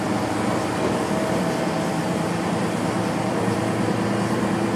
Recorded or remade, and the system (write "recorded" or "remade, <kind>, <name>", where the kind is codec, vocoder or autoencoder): remade, vocoder, BigVGAN v2